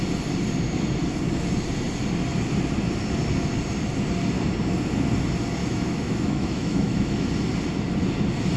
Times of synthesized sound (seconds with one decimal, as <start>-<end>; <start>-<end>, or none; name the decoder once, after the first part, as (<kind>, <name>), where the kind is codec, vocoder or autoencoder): 5.6-7.3 (autoencoder, DAC-VAE)